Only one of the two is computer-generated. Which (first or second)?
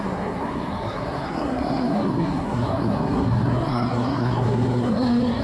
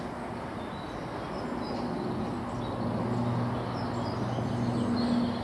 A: first